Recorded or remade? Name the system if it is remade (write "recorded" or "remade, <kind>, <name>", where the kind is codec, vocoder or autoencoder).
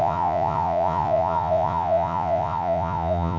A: remade, vocoder, Vocos